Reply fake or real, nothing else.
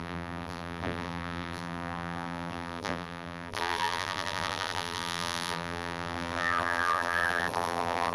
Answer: fake